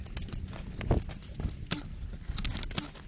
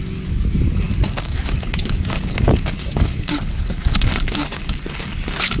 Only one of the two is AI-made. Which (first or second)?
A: second